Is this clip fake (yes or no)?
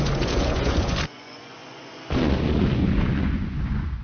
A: yes